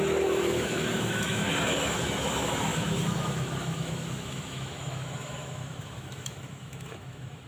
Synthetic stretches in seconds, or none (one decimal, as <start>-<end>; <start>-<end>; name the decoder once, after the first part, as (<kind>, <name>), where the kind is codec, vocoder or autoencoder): 0.0-7.5 (autoencoder, DAC-VAE)

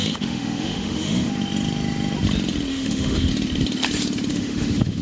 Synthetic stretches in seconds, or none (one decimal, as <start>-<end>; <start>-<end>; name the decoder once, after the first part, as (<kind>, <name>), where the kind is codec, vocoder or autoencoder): 0.0-1.3 (autoencoder, DAC-VAE); 2.7-3.3; 4.3-5.0

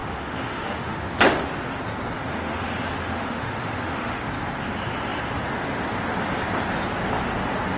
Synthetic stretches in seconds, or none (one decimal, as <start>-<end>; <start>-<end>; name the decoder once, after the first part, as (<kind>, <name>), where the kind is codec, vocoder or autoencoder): 0.0-1.1 (autoencoder, DAC-VAE); 2.3-4.2

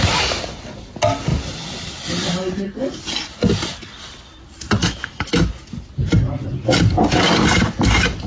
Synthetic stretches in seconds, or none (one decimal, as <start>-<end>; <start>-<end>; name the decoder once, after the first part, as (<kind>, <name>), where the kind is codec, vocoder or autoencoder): 4.8-5.5 (autoencoder, DAC-VAE)

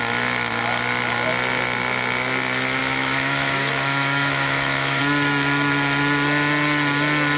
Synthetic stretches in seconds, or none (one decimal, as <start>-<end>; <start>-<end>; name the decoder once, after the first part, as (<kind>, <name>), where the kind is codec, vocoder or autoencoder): 2.8-5.0 (autoencoder, DAC-VAE)

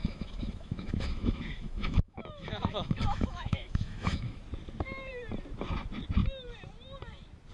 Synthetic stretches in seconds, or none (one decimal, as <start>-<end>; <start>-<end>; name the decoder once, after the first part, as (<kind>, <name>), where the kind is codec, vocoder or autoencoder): 0.0-4.4 (autoencoder, DAC-VAE)